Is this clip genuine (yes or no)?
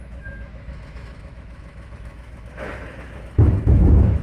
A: no